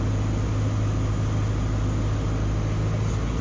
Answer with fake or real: real